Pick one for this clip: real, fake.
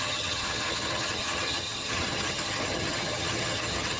fake